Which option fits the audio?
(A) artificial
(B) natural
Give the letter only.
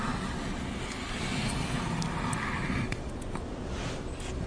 B